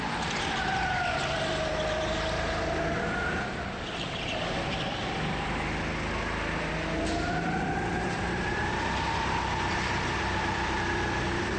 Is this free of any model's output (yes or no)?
no